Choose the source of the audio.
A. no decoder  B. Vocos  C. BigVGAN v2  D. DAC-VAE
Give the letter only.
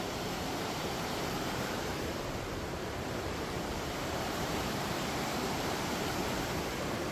C